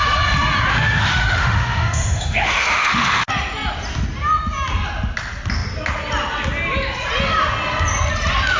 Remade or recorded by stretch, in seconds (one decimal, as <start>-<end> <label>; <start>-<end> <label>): 0.0-0.7 recorded; 0.7-3.3 remade; 3.3-8.6 recorded

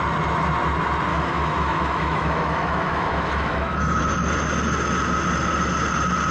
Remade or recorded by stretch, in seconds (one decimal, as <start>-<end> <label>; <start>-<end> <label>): 0.0-1.1 recorded; 1.1-4.0 remade; 4.0-6.3 recorded

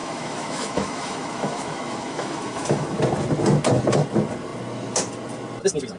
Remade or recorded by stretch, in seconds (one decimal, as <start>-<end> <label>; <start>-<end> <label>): 0.0-3.0 remade; 3.0-6.0 recorded

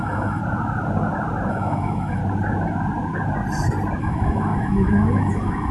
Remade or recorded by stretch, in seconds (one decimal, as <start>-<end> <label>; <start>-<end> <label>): 0.0-0.4 remade; 0.4-1.5 recorded; 1.5-2.2 remade; 2.2-4.0 recorded; 4.0-5.7 remade

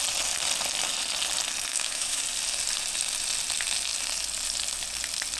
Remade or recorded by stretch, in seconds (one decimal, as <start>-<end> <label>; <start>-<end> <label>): 0.0-1.7 recorded; 1.7-2.2 remade; 2.2-5.4 recorded

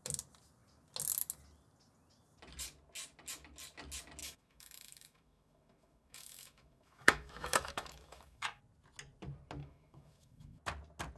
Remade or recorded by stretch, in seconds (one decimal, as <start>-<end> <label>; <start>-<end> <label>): 0.0-4.2 recorded; 4.2-8.6 remade; 8.6-9.6 recorded; 9.6-10.6 remade; 10.6-11.2 recorded

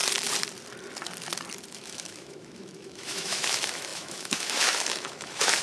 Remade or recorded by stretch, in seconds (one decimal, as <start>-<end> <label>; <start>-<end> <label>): 0.0-1.7 recorded; 1.7-5.6 remade